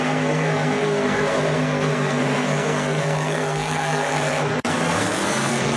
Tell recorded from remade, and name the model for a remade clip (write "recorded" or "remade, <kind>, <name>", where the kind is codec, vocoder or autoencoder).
remade, codec, SNAC